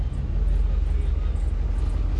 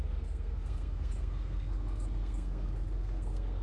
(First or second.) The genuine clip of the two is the first